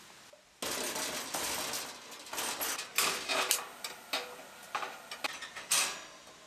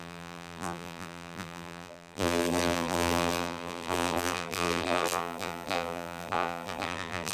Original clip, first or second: first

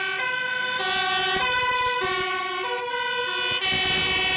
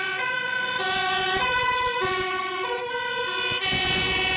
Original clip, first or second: first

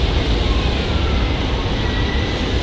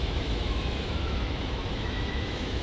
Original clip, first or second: first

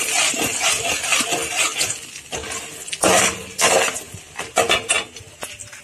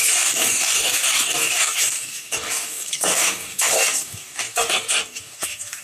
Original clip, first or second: first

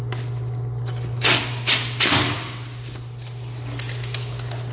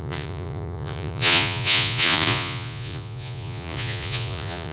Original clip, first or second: first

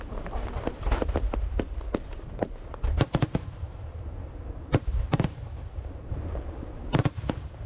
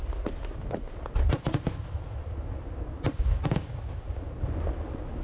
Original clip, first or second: second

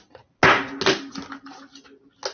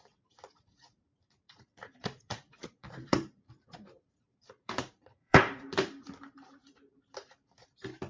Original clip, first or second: first